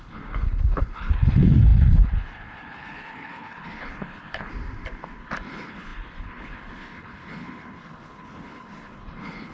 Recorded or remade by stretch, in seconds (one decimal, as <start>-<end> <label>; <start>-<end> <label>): 0.0-4.5 remade; 4.5-5.5 recorded; 5.5-9.5 remade